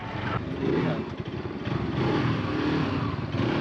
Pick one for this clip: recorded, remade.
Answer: recorded